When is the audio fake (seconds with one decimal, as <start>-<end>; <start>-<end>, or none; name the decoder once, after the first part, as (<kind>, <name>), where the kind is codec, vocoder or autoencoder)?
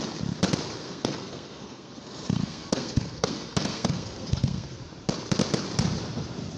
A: 0.8-4.8 (codec, SNAC)